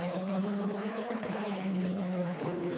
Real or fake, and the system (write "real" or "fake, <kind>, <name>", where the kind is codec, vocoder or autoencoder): fake, codec, HILCodec